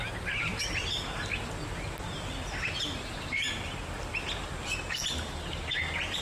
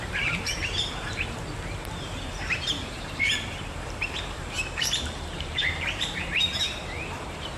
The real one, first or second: first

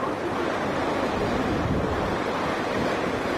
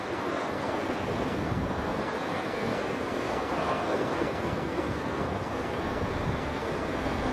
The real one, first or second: first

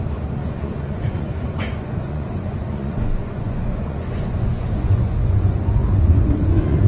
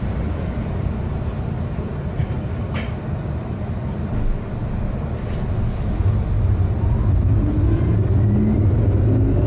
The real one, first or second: second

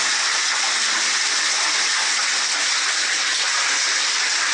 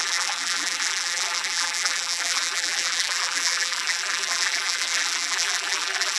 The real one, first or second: first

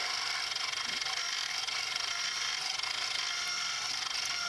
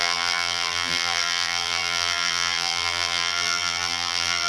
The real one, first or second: first